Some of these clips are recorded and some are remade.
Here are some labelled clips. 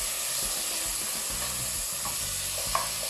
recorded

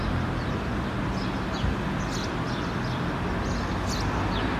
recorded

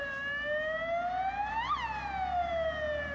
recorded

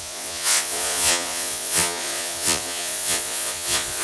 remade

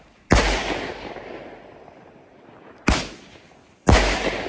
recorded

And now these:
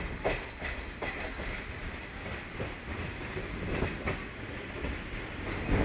recorded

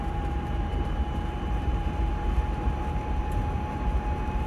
remade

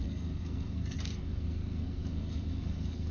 remade